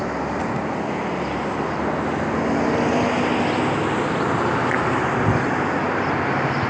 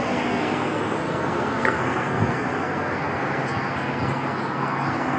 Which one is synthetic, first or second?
second